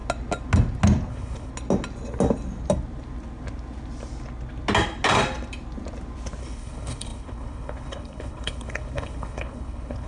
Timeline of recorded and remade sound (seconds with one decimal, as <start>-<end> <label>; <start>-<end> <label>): 0.0-1.1 recorded; 1.1-1.5 remade; 1.5-6.4 recorded; 6.4-10.1 remade